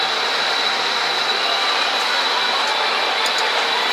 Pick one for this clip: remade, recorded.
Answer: recorded